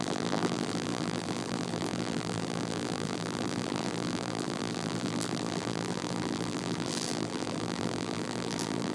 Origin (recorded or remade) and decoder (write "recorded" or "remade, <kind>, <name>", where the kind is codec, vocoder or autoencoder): remade, vocoder, BigVGAN v2